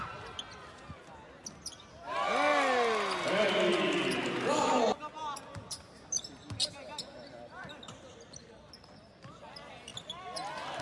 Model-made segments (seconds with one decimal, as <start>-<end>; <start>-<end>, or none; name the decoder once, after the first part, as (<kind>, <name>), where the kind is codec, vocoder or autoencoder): none